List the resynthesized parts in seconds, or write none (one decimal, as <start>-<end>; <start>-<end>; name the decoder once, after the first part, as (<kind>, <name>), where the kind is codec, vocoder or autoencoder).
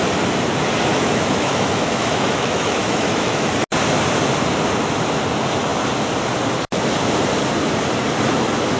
0.9-3.5 (autoencoder, DAC-VAE)